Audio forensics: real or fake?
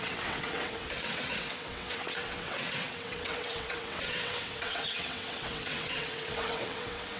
fake